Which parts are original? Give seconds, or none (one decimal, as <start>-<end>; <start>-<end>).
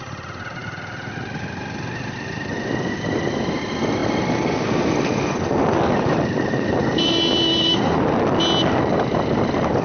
0.0-9.8